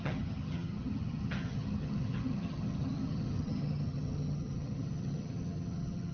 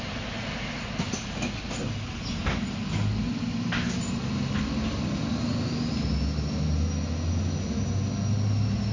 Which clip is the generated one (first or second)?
first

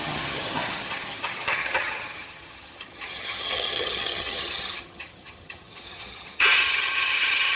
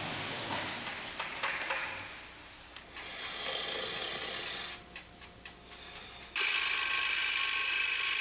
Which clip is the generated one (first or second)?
first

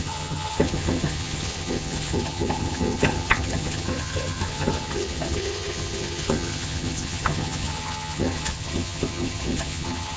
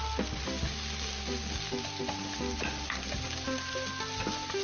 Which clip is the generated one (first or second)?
first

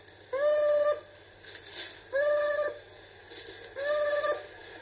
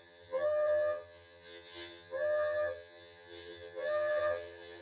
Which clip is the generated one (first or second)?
second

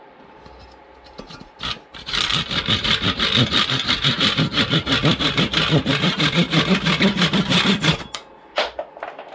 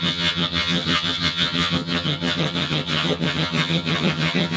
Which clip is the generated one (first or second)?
second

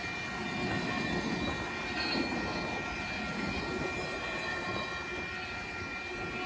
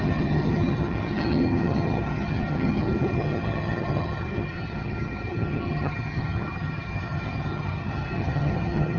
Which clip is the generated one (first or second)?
second